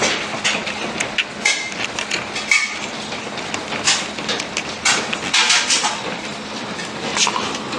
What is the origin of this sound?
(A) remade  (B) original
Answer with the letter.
B